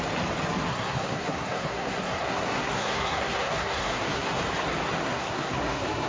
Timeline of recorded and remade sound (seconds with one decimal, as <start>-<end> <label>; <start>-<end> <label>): 0.0-0.7 recorded; 0.7-4.4 remade; 4.4-5.0 recorded; 5.0-6.1 remade